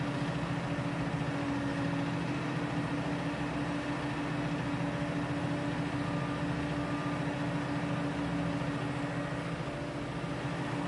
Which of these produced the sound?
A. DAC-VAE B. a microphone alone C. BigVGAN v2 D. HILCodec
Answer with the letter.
B